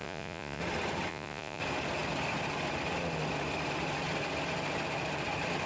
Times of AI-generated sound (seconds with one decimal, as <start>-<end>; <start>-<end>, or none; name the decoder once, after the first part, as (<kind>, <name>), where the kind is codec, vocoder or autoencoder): 0.0-0.6 (vocoder, Vocos); 1.1-1.6